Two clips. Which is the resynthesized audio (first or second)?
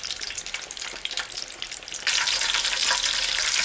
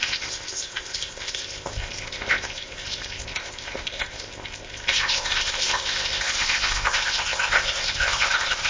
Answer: second